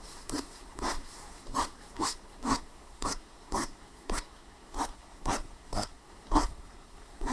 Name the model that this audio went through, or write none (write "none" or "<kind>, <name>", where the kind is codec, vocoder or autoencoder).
codec, SNAC